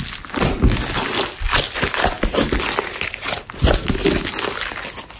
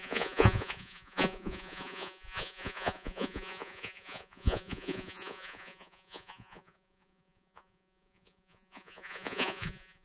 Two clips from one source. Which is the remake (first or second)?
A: second